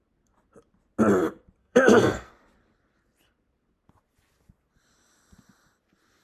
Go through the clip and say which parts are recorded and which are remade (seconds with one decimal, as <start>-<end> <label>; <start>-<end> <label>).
0.0-1.6 recorded; 1.6-2.3 remade; 2.3-6.2 recorded